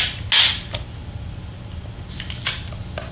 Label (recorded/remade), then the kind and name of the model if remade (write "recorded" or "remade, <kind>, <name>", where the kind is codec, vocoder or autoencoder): recorded